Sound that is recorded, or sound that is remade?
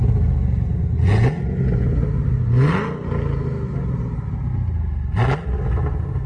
recorded